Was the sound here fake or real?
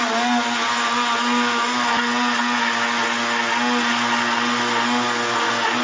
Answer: real